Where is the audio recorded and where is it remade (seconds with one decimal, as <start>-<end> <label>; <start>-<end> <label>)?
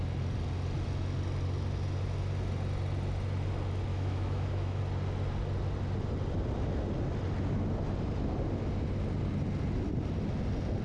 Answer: 0.0-3.9 recorded; 3.9-4.8 remade; 4.8-10.8 recorded